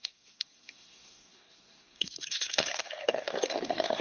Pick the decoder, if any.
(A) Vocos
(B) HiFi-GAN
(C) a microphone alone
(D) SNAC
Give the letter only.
D